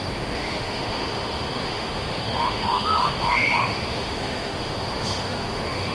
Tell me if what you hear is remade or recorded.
remade